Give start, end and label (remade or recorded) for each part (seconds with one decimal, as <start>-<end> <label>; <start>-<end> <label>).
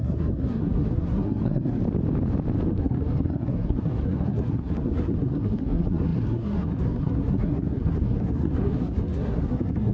0.0-1.8 remade; 1.8-2.7 recorded; 2.7-9.9 remade